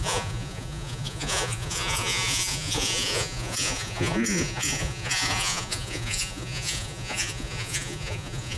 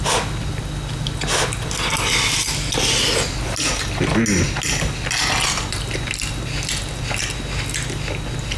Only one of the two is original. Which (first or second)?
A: second